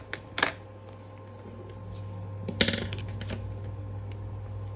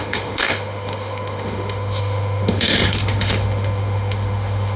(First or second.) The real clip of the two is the first